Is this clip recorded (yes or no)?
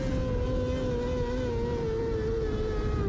yes